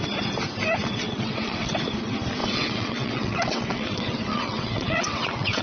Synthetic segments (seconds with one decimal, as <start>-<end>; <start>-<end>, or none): 0.8-1.7; 2.4-5.6